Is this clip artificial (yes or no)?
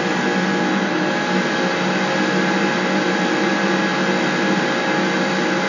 no